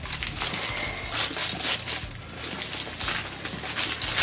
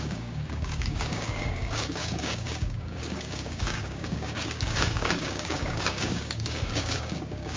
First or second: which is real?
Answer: first